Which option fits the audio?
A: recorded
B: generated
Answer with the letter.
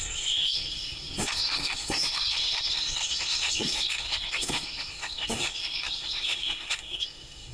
B